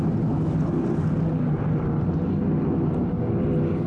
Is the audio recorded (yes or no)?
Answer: yes